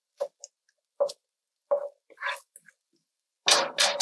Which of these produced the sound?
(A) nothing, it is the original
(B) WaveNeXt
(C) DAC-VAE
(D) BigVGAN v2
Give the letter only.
A